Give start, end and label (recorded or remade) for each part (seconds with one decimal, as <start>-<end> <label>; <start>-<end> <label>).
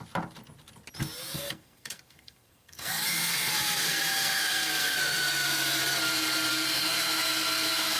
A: 0.0-1.3 recorded; 1.3-5.8 remade; 5.8-6.5 recorded; 6.5-8.0 remade